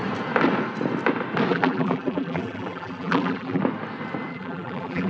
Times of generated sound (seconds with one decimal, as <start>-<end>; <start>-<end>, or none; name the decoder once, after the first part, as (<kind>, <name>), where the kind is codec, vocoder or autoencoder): 1.5-3.6 (vocoder, BigVGAN v2); 4.3-5.1